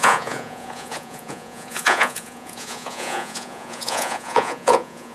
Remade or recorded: remade